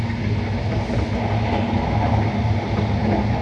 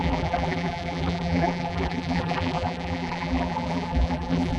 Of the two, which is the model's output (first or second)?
second